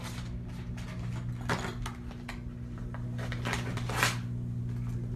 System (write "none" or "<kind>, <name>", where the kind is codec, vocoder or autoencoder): none